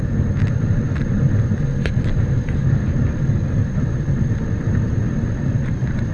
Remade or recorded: remade